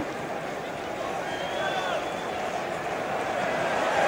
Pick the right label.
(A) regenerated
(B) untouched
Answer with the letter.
B